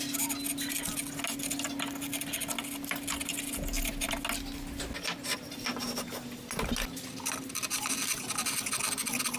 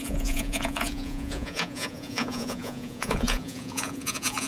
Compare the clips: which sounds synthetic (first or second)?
second